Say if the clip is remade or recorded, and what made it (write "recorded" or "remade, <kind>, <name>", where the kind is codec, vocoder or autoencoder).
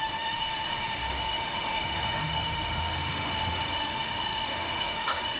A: remade, autoencoder, DAC-VAE